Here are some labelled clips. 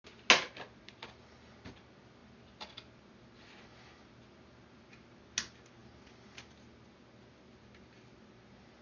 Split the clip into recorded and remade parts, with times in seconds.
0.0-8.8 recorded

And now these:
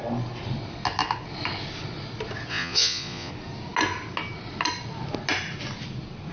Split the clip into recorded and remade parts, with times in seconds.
0.0-2.5 recorded; 2.5-3.3 remade; 3.3-6.3 recorded

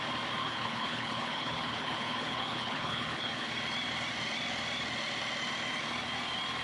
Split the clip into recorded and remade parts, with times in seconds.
0.0-0.4 recorded; 0.4-3.5 remade; 3.5-6.6 recorded

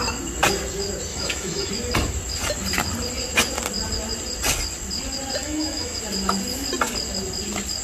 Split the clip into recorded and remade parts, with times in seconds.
0.0-1.1 recorded; 1.1-1.7 remade; 1.7-5.4 recorded; 5.4-6.0 remade; 6.0-7.8 recorded

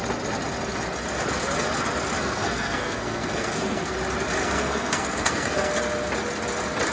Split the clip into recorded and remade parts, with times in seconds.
0.0-2.2 recorded; 2.2-3.9 remade; 3.9-4.4 recorded; 4.4-5.7 remade; 5.7-6.9 recorded

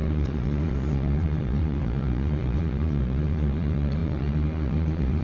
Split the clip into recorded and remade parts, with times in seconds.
0.0-5.2 remade